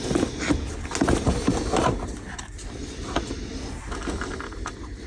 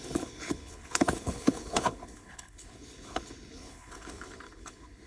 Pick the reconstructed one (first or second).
second